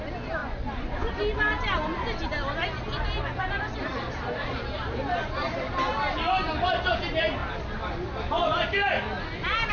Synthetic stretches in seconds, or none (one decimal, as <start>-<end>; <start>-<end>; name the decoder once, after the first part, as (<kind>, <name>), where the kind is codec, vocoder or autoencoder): 0.4-1.1 (vocoder, Vocos)